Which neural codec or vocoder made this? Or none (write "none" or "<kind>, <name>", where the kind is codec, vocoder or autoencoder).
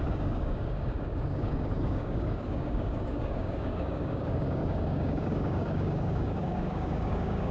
codec, DAC